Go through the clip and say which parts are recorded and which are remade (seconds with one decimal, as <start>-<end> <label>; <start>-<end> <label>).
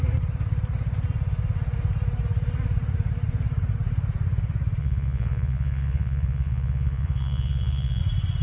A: 0.0-4.8 recorded; 4.8-8.0 remade; 8.0-8.4 recorded